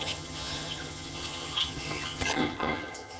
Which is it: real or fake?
fake